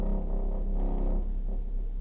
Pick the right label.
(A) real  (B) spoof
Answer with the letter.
A